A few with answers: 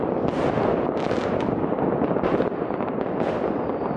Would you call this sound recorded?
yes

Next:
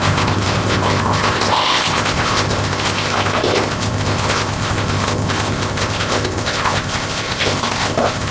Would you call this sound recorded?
no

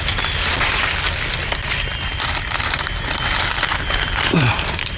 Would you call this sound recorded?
yes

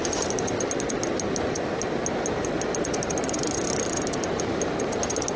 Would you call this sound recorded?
yes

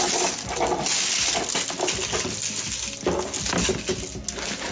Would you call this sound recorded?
yes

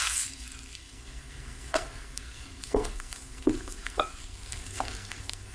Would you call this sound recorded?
no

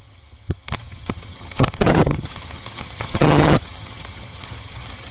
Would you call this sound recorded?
no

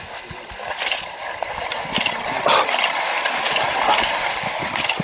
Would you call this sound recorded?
yes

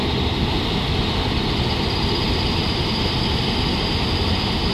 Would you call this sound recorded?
yes